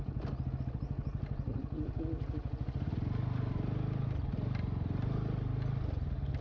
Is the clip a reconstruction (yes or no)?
no